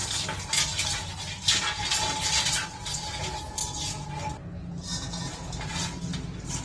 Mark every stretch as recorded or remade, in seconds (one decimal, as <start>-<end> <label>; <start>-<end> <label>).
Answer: 0.0-6.6 recorded